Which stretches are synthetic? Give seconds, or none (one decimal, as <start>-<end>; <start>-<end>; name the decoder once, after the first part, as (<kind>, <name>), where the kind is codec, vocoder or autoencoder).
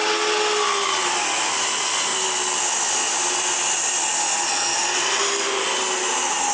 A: none